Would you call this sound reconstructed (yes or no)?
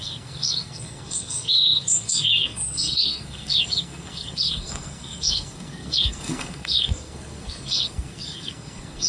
yes